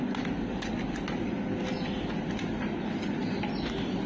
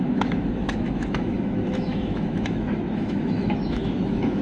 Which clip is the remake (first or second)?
second